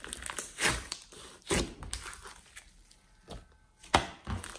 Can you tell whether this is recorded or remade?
recorded